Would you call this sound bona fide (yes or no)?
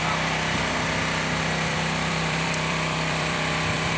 no